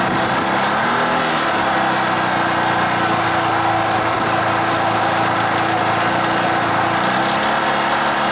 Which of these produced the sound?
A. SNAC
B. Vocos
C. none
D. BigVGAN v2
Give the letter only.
C